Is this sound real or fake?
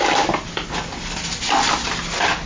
real